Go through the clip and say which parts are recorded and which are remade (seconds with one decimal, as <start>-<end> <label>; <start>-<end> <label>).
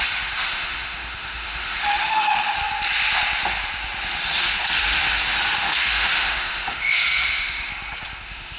0.0-2.6 remade; 2.6-5.6 recorded; 5.6-7.7 remade; 7.7-8.2 recorded; 8.2-8.6 remade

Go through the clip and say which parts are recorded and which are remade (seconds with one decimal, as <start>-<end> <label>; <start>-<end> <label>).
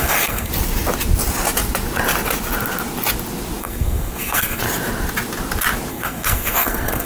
0.0-0.5 remade; 0.5-3.6 recorded; 3.6-4.6 remade; 4.6-5.9 recorded; 5.9-7.1 remade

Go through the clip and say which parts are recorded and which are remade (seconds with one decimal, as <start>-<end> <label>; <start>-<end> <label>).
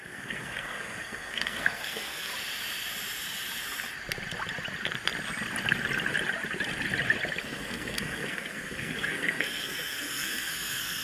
0.0-2.3 remade; 2.3-7.4 recorded; 7.4-11.0 remade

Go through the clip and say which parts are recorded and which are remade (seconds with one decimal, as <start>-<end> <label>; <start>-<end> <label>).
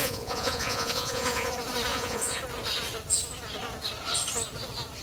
0.0-1.5 remade; 1.5-1.9 recorded; 1.9-2.4 remade; 2.4-5.0 recorded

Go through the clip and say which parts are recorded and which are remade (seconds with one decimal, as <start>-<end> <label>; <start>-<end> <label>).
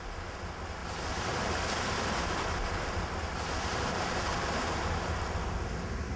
0.0-0.8 recorded; 0.8-3.5 remade; 3.5-4.3 recorded; 4.3-5.3 remade; 5.3-6.2 recorded